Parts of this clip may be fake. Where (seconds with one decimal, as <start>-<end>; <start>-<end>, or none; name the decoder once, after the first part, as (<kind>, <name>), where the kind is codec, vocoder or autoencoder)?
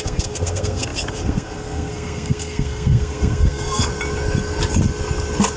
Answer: 0.0-3.9 (codec, SNAC)